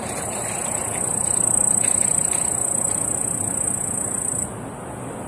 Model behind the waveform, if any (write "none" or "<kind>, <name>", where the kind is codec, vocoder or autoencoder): none